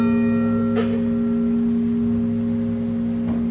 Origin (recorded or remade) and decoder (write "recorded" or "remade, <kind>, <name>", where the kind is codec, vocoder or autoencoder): recorded